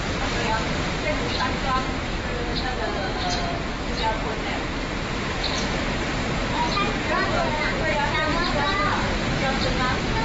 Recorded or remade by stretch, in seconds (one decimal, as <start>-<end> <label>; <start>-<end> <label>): 0.0-10.2 recorded